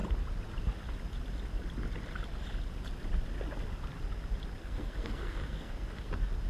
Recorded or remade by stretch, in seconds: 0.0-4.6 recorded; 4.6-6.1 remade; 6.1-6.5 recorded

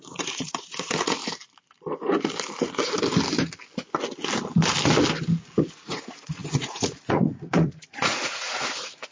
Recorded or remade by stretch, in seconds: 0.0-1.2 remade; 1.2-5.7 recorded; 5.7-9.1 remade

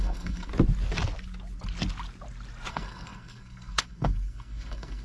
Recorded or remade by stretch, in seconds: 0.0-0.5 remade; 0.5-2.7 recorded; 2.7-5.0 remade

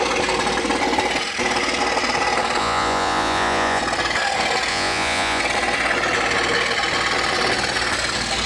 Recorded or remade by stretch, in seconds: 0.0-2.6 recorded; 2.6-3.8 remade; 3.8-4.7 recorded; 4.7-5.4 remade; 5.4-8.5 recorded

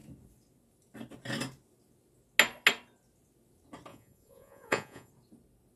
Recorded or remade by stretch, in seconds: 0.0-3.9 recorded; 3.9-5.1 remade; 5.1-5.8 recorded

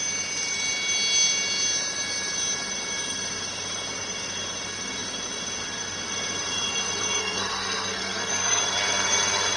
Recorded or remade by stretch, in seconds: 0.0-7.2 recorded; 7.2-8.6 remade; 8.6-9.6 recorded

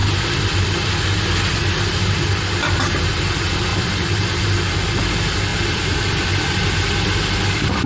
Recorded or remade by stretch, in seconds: 0.0-3.7 recorded; 3.7-4.7 remade; 4.7-5.5 recorded; 5.5-6.3 remade; 6.3-7.9 recorded